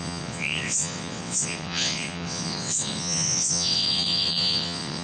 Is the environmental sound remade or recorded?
remade